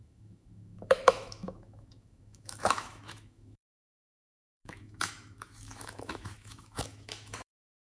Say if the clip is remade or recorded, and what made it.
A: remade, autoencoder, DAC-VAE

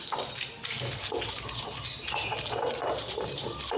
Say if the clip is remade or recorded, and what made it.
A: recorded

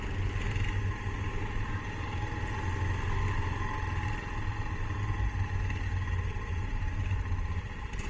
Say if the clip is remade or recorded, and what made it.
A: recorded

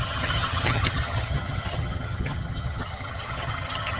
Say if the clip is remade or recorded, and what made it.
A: remade, vocoder, HiFi-GAN